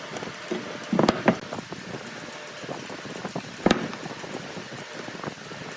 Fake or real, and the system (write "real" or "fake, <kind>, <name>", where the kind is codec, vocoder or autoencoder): real